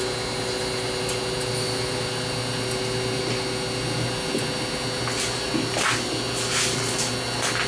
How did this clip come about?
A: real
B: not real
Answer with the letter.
A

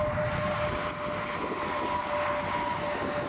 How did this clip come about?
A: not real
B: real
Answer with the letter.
B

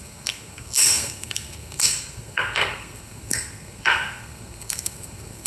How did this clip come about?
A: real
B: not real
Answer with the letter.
B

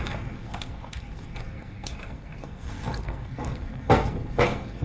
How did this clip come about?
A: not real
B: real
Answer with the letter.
A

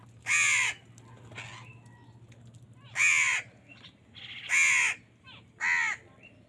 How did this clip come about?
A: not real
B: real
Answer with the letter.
B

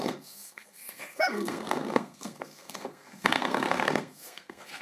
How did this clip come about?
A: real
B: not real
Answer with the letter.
B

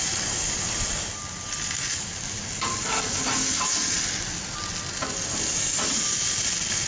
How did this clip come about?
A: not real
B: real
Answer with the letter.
B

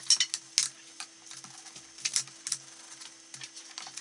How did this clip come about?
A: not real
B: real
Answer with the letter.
B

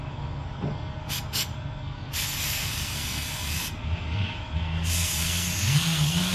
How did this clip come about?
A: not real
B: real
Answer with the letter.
A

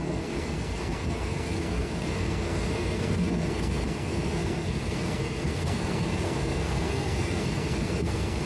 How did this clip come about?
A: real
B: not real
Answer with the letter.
B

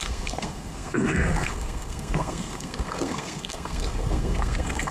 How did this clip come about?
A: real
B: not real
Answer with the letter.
B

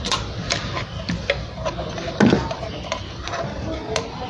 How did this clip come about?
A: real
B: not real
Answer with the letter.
A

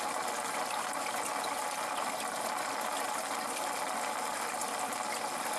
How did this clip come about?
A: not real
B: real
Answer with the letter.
B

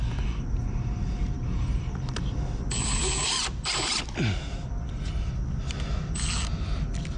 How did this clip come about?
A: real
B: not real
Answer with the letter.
A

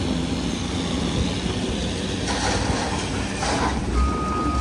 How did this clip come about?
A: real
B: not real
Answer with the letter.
A